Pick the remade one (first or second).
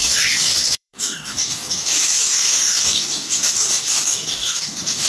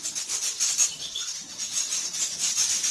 first